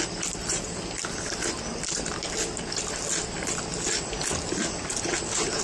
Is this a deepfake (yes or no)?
no